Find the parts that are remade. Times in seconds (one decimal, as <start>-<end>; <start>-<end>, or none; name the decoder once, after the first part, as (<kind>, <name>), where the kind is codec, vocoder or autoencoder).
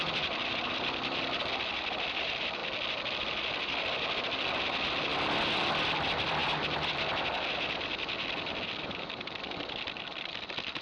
0.0-2.6 (vocoder, BigVGAN v2); 3.5-6.4; 8.8-10.8